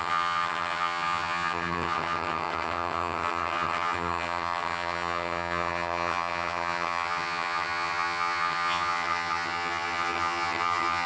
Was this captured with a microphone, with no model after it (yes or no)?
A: no